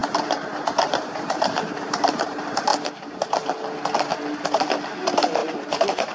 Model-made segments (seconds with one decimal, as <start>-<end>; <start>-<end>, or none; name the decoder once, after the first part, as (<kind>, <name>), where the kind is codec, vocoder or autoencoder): 0.0-2.7 (vocoder, BigVGAN v2); 4.3-6.1

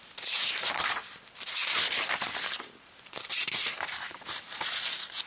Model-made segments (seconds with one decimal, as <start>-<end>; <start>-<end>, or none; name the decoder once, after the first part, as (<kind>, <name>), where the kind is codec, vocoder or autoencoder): 0.0-5.3 (vocoder, BigVGAN v2)

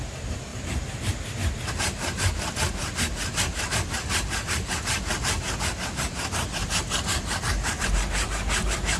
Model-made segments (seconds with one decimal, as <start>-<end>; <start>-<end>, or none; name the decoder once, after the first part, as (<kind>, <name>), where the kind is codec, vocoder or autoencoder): 0.0-9.0 (vocoder, BigVGAN v2)

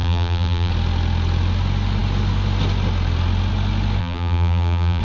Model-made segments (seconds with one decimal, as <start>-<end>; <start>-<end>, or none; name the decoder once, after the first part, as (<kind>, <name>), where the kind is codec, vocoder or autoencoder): 0.0-0.7 (vocoder, BigVGAN v2); 4.0-5.0

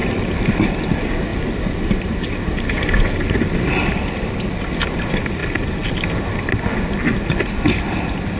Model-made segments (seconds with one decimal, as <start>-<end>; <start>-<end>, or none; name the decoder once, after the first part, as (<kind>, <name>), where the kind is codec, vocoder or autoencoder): 1.3-4.3 (vocoder, BigVGAN v2)